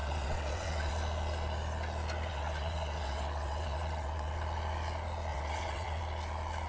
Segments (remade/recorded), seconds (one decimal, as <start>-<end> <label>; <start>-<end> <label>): 0.0-0.9 remade; 0.9-2.3 recorded; 2.3-4.3 remade; 4.3-5.3 recorded; 5.3-6.0 remade; 6.0-6.7 recorded